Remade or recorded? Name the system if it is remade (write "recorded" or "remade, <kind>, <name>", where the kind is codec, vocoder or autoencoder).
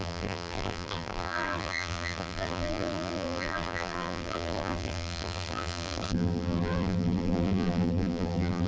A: remade, vocoder, BigVGAN v2